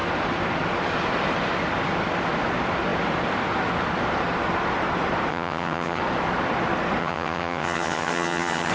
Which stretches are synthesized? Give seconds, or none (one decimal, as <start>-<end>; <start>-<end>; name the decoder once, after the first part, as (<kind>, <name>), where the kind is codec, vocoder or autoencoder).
5.3-6.0 (vocoder, HiFi-GAN); 7.0-8.7